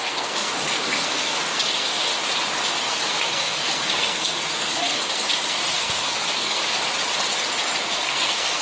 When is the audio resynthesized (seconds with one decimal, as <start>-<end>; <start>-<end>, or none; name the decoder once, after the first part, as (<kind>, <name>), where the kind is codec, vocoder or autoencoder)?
0.0-2.1 (codec, SNAC); 2.6-6.6; 7.8-8.6